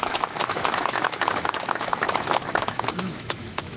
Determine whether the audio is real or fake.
fake